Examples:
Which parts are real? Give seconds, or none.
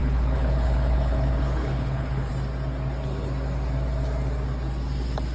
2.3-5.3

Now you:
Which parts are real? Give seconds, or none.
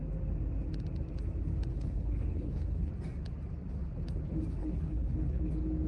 0.0-1.7; 2.9-4.6; 5.5-5.9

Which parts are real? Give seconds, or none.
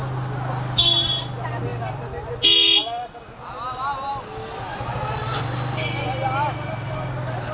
0.0-7.5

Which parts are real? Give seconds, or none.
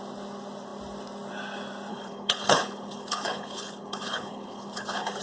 0.0-1.9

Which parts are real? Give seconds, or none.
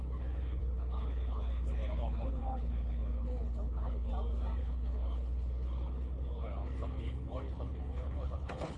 4.1-4.6